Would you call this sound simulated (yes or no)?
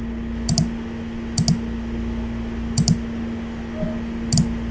no